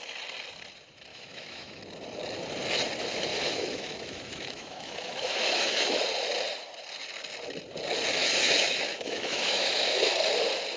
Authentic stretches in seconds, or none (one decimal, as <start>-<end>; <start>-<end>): 0.0-1.1; 1.8-3.3; 6.0-8.2; 10.1-10.8